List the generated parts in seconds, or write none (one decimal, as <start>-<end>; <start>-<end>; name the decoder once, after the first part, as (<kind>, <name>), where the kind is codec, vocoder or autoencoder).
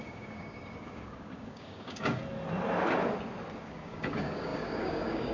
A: 0.0-2.2 (codec, DAC); 3.6-5.3